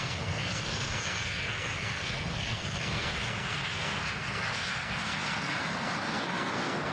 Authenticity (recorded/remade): remade